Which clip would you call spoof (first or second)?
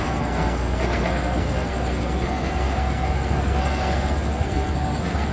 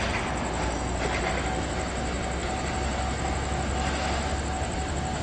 first